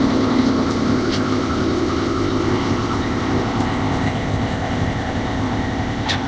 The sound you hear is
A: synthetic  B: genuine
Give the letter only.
A